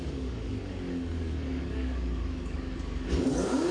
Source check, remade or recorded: remade